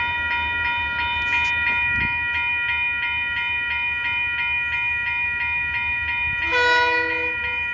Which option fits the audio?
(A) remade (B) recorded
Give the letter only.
B